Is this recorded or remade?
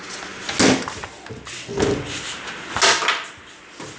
recorded